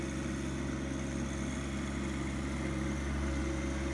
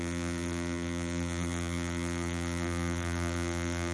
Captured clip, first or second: first